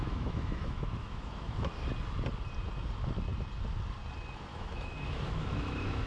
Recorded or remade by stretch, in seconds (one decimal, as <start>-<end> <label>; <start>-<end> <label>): 0.0-1.7 remade; 1.7-4.5 recorded; 4.5-6.1 remade